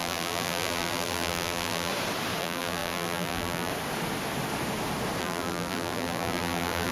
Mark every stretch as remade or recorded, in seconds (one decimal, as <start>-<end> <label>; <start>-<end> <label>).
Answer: 0.0-1.9 remade; 1.9-2.4 recorded; 2.4-3.7 remade; 3.7-5.2 recorded; 5.2-6.9 remade